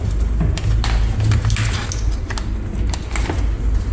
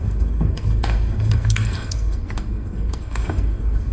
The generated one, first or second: second